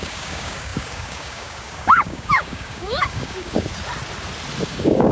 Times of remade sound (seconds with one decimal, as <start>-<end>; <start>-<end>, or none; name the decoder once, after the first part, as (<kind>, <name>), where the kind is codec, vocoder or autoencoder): 0.0-3.7 (codec, DAC); 4.6-5.1